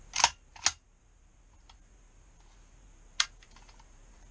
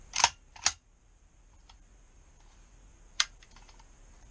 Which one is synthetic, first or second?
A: second